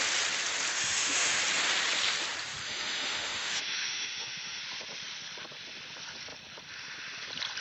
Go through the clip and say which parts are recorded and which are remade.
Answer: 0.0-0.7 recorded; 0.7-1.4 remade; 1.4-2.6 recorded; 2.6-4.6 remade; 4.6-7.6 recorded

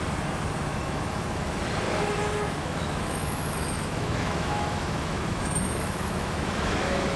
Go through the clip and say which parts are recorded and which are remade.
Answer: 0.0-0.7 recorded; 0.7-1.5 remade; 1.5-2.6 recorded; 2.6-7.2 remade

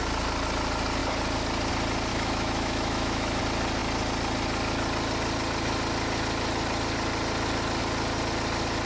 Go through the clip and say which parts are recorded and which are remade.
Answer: 0.0-2.1 recorded; 2.1-3.4 remade; 3.4-8.9 recorded

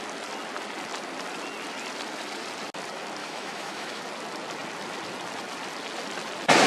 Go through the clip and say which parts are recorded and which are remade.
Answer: 0.0-3.2 recorded; 3.2-4.0 remade; 4.0-6.7 recorded